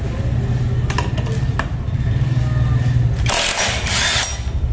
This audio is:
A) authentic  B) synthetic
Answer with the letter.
A